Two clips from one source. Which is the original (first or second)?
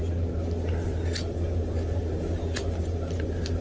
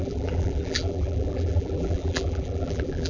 first